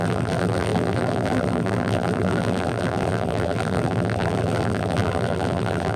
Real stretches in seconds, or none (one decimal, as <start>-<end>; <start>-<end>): none